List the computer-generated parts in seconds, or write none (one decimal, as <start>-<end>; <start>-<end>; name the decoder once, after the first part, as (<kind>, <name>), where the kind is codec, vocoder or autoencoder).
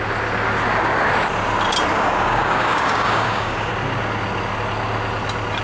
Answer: 1.9-3.7 (codec, DAC)